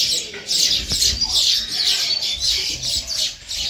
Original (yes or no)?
yes